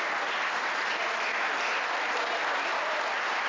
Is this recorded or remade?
recorded